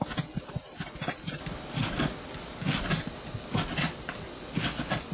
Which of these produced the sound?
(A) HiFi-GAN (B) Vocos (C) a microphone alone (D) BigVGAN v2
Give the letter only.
C